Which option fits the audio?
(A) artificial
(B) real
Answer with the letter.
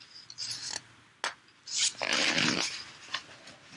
B